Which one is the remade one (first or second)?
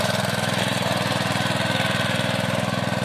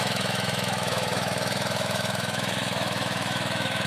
second